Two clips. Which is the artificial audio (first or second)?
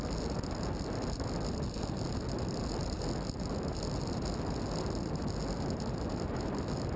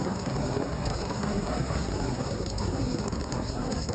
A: second